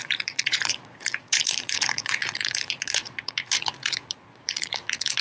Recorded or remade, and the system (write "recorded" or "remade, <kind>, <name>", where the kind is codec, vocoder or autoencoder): remade, vocoder, Vocos